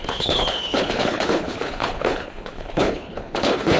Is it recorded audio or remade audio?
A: remade